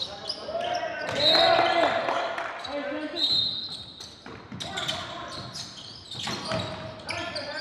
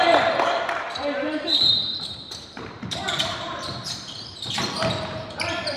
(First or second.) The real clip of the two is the first